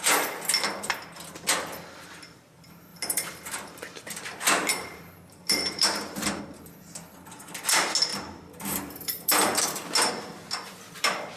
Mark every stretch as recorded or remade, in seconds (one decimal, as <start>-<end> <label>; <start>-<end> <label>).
0.0-2.9 recorded; 2.9-6.4 remade; 6.4-8.1 recorded; 8.1-10.1 remade; 10.1-11.4 recorded